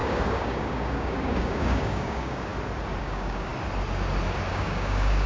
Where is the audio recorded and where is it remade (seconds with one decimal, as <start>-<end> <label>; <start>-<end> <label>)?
0.0-2.5 remade; 2.5-3.0 recorded; 3.0-3.5 remade; 3.5-4.5 recorded; 4.5-5.3 remade